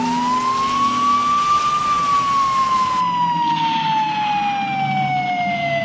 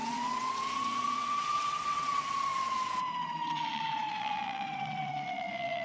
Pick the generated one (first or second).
second